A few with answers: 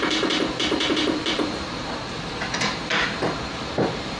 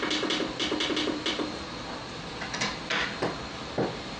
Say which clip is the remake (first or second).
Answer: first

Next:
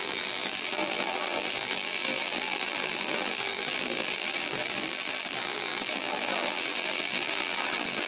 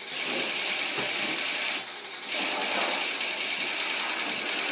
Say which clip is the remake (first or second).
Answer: first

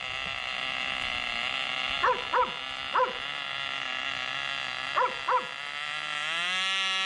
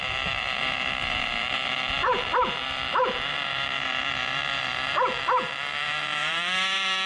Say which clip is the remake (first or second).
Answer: second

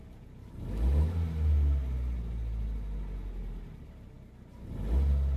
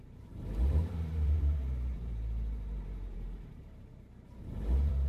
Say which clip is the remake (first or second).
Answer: second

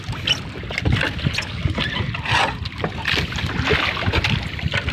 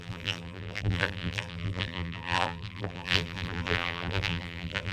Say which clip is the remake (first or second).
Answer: second